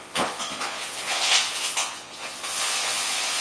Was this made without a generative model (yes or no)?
no